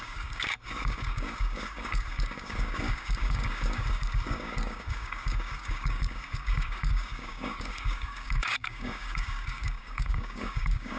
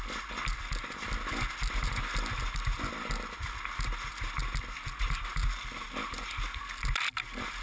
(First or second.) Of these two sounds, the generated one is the first